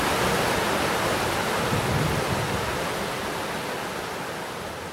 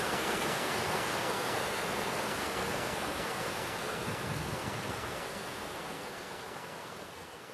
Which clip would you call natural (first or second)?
first